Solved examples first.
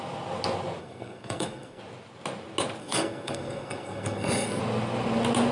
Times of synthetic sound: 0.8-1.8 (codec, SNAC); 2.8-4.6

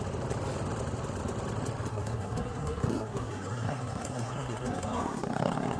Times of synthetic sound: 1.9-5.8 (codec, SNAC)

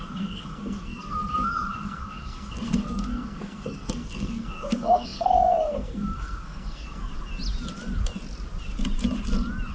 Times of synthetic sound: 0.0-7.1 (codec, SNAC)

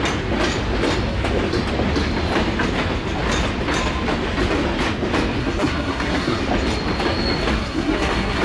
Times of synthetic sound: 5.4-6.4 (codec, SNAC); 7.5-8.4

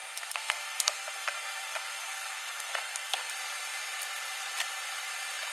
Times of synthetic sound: 0.0-3.3 (codec, SNAC)

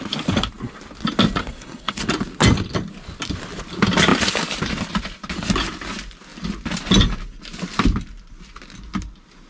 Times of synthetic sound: 1.4-2.0 (codec, SNAC)